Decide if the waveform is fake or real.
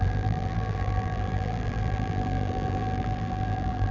fake